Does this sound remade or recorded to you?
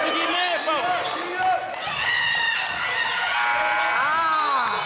recorded